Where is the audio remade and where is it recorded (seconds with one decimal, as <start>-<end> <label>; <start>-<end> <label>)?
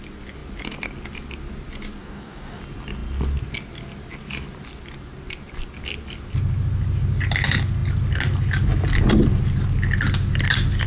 0.0-2.0 recorded; 2.0-2.6 remade; 2.6-10.9 recorded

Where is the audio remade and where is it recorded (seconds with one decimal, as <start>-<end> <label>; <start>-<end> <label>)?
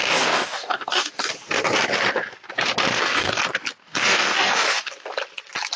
0.0-1.3 remade; 1.3-2.9 recorded; 2.9-3.4 remade; 3.4-3.8 recorded; 3.8-4.9 remade; 4.9-5.8 recorded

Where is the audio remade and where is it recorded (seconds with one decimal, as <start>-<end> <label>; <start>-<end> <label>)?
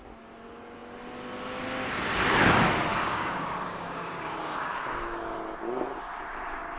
0.0-2.9 recorded; 2.9-4.8 remade; 4.8-6.8 recorded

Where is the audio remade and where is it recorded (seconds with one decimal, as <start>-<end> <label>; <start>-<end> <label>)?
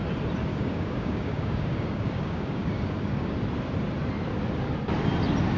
0.0-0.5 recorded; 0.5-3.3 remade; 3.3-5.6 recorded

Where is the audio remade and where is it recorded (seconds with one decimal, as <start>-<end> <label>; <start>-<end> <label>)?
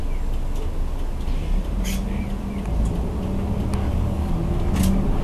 0.0-3.8 recorded; 3.8-4.3 remade; 4.3-5.2 recorded